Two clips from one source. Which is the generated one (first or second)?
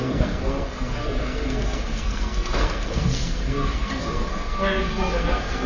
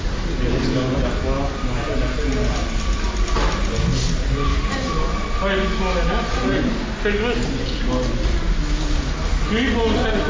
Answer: first